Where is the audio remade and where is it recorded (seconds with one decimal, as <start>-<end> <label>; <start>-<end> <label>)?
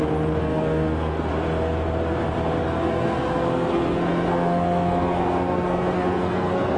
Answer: 0.0-0.4 recorded; 0.4-1.3 remade; 1.3-2.6 recorded; 2.6-6.8 remade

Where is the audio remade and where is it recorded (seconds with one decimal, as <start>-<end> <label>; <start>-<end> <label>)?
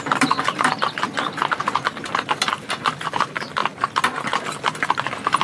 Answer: 0.0-3.6 remade; 3.6-4.6 recorded; 4.6-5.4 remade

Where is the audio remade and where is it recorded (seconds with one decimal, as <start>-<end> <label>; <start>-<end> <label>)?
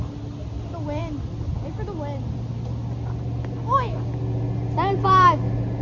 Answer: 0.0-5.8 recorded